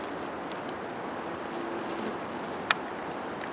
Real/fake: real